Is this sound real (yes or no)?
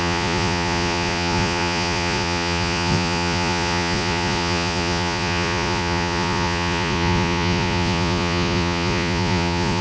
no